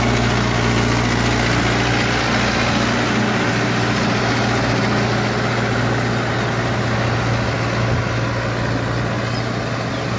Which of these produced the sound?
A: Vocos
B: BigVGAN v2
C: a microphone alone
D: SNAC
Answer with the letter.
C